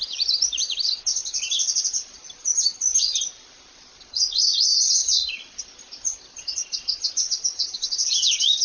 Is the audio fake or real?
real